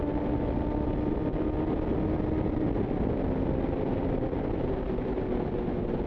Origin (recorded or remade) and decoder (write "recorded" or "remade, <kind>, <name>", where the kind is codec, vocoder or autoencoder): recorded